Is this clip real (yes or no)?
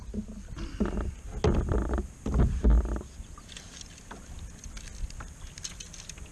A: yes